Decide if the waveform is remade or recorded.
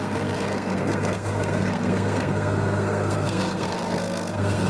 remade